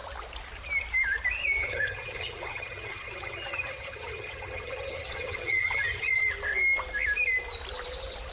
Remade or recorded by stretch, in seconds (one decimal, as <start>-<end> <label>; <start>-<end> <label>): 0.0-1.6 recorded; 1.6-6.3 remade; 6.3-8.3 recorded

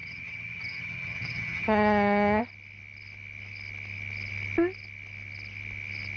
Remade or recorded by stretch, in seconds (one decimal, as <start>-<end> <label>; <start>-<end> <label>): 0.0-2.4 remade; 2.4-6.2 recorded

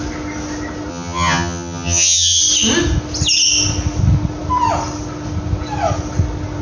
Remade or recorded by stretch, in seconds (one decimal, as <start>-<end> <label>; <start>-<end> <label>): 0.0-0.9 recorded; 0.9-2.4 remade; 2.4-6.6 recorded

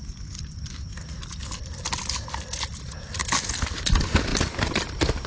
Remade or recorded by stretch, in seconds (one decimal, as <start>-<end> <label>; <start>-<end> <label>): 0.0-5.3 recorded

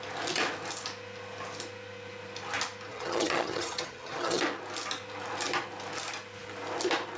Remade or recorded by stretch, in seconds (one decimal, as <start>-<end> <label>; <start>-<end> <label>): 0.0-2.9 recorded; 2.9-4.4 remade; 4.4-7.2 recorded

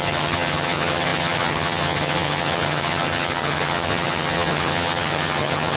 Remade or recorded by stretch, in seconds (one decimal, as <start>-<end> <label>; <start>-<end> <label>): 0.0-5.8 remade

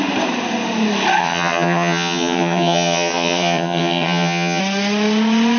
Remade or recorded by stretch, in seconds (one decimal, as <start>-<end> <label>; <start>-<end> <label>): 0.0-1.2 recorded; 1.2-4.6 remade; 4.6-5.6 recorded